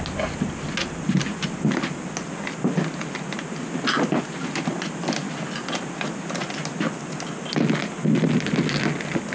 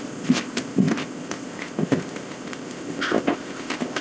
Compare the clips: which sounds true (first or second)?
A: first